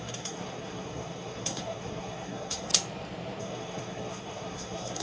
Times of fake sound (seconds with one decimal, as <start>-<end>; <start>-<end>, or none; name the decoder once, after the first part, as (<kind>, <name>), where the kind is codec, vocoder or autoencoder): 0.0-2.7 (codec, SNAC); 3.4-5.0